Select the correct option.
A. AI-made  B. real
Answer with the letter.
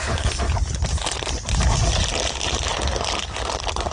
B